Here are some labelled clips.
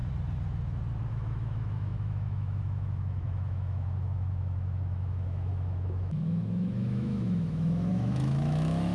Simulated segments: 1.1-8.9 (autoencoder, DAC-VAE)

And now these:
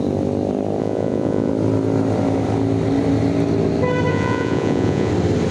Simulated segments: 0.8-1.5 (vocoder, Vocos); 4.1-5.1

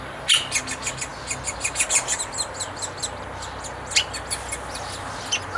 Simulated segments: none

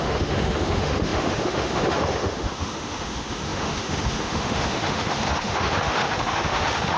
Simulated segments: 0.0-7.0 (autoencoder, DAC-VAE)

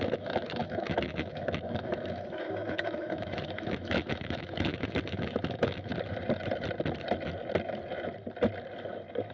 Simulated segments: 0.0-5.9 (autoencoder, DAC-VAE)

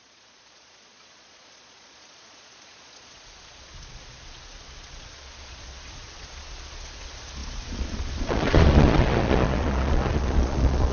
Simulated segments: 0.0-10.9 (vocoder, Vocos)

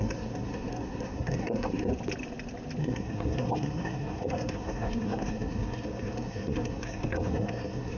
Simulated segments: 0.0-1.9 (codec, SNAC); 2.8-8.0